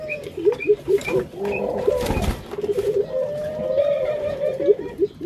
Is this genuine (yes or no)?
no